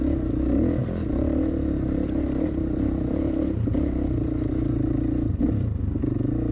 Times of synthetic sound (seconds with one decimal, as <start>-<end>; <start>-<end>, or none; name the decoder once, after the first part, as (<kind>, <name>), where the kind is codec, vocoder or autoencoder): 0.8-4.5 (vocoder, BigVGAN v2)